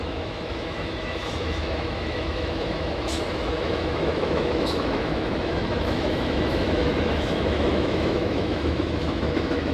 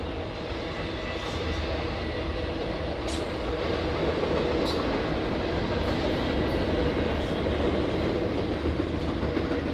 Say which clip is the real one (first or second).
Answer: second